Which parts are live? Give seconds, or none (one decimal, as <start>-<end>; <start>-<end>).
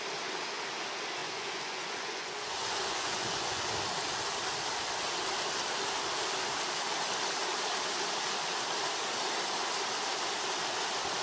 0.0-1.2; 3.6-11.2